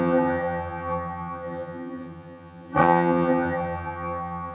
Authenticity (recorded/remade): remade